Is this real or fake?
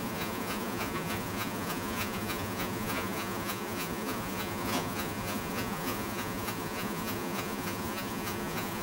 fake